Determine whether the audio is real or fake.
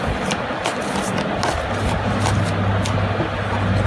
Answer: real